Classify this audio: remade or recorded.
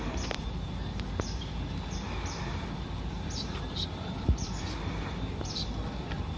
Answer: remade